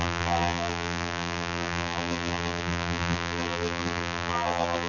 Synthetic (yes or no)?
yes